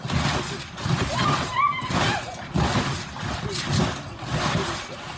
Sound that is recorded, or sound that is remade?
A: recorded